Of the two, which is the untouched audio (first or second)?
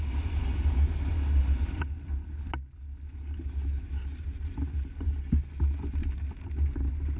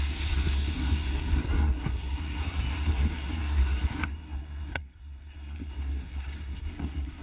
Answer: first